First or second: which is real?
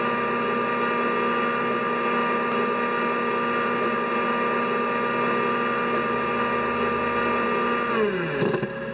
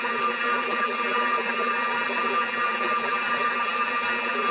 first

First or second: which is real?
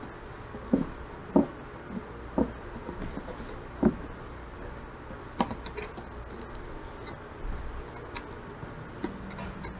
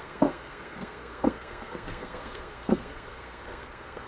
first